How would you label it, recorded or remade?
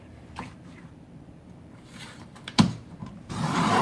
remade